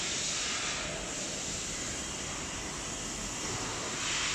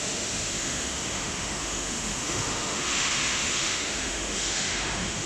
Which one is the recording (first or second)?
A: first